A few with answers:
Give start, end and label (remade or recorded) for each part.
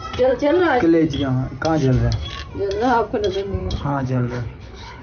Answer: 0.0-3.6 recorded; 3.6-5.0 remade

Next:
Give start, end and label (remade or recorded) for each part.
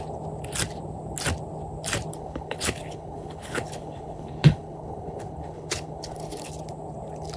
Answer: 0.0-2.1 recorded; 2.1-6.5 remade; 6.5-7.4 recorded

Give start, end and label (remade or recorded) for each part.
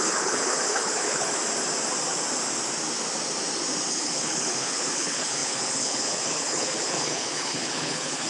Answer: 0.0-1.4 remade; 1.4-3.9 recorded; 3.9-8.3 remade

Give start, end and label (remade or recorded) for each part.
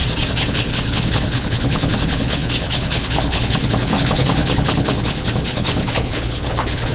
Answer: 0.0-0.5 recorded; 0.5-6.9 remade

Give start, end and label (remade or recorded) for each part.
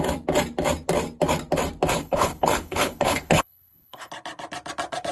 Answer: 0.0-1.9 recorded; 1.9-4.1 remade; 4.1-5.1 recorded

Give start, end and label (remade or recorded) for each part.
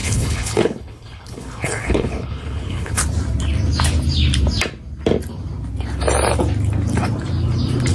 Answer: 0.0-3.0 remade; 3.0-7.9 recorded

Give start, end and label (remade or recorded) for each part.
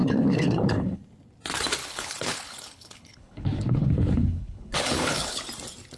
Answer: 0.0-1.0 remade; 1.0-1.8 recorded; 1.8-5.4 remade; 5.4-6.0 recorded